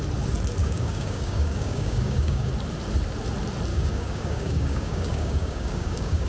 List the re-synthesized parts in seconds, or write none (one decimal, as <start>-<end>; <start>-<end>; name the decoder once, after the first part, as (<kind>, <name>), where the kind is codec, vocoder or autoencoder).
0.6-2.5 (codec, DAC); 3.7-6.3